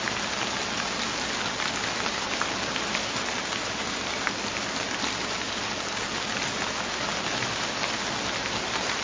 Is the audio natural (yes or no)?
yes